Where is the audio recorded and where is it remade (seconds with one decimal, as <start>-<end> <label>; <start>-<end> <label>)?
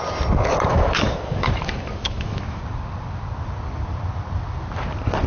0.0-0.7 recorded; 0.7-2.6 remade; 2.6-5.3 recorded